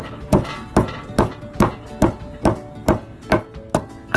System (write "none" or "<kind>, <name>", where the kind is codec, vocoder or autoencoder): none